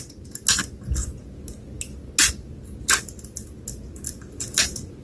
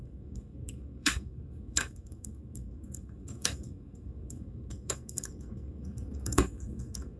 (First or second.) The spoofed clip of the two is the second